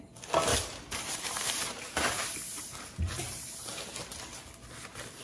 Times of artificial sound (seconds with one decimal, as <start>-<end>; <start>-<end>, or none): 0.5-3.4